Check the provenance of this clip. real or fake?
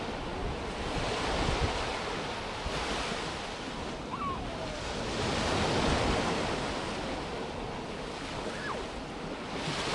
real